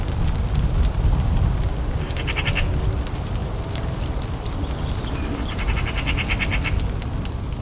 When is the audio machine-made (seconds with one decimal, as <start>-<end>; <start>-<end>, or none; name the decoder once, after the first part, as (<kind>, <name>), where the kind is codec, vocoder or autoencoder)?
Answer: none